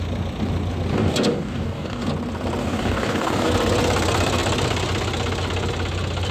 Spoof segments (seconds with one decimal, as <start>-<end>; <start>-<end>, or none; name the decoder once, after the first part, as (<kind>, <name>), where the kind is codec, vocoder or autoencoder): 0.9-2.1 (codec, DAC); 2.6-3.5